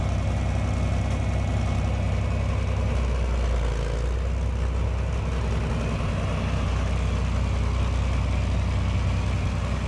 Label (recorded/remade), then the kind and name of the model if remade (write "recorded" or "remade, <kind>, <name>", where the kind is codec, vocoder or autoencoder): recorded